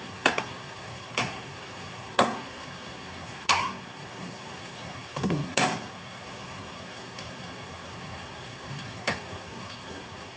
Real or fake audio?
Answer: fake